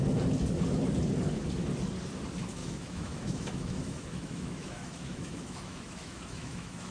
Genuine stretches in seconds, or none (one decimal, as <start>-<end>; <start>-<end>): 0.0-2.6